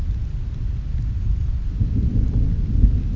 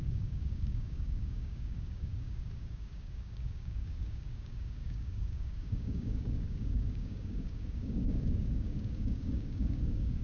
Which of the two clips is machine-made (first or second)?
second